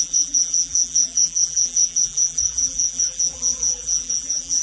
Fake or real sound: fake